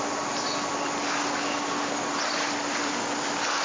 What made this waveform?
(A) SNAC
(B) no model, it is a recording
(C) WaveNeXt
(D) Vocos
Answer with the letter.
B